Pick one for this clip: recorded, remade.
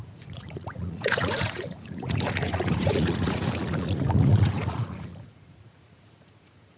remade